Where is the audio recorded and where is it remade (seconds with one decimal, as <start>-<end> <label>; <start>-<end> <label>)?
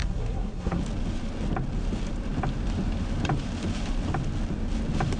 0.0-0.8 remade; 0.8-5.2 recorded